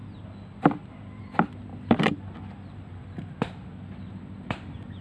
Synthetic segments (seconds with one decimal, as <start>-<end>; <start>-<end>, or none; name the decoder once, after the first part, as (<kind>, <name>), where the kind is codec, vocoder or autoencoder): 1.7-3.3 (vocoder, BigVGAN v2)